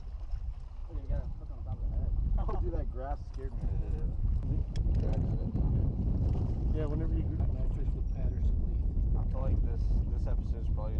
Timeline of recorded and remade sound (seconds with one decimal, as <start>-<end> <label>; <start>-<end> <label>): 0.0-11.0 recorded